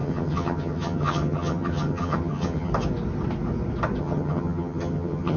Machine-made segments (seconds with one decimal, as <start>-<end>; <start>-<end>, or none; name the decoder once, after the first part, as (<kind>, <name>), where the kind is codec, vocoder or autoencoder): 0.0-2.7 (vocoder, HiFi-GAN); 4.0-5.4